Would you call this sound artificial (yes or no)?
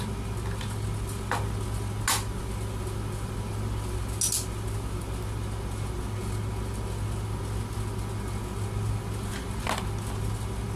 no